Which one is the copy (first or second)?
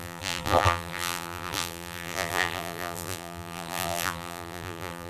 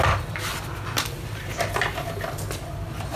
first